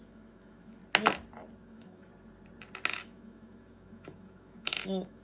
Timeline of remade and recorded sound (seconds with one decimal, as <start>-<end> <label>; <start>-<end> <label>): 0.0-0.8 remade; 0.8-1.6 recorded; 1.6-2.1 remade; 2.1-2.9 recorded; 2.9-5.2 remade